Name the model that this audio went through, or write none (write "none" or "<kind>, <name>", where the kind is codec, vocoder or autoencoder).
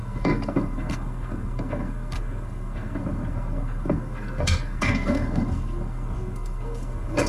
codec, SNAC